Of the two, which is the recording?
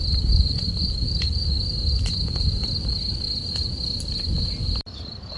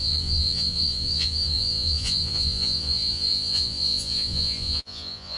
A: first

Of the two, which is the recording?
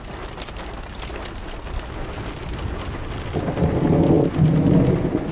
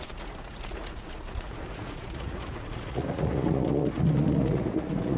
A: first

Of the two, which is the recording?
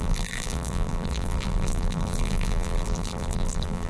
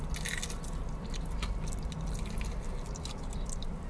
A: second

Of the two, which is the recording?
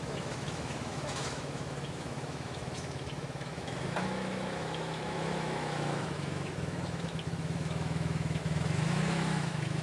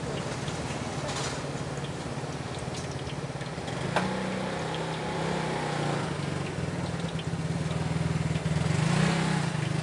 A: second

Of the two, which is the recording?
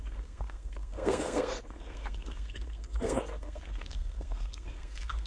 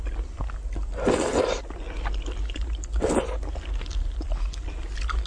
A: second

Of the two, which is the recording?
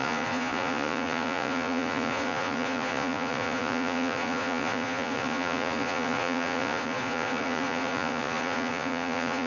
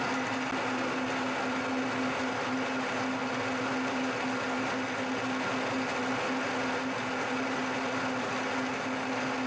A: second